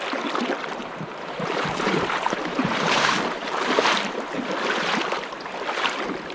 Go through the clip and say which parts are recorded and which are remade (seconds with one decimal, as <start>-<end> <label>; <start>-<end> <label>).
0.0-0.8 recorded; 0.8-4.4 remade; 4.4-6.3 recorded